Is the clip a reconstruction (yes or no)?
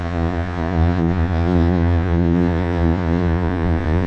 yes